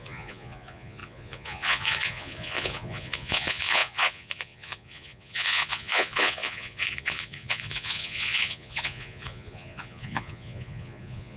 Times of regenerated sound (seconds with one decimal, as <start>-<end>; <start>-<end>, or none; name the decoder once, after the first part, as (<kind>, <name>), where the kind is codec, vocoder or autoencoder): 0.0-11.4 (vocoder, Vocos)